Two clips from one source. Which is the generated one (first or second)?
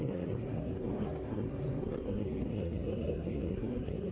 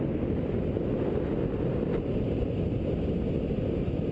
first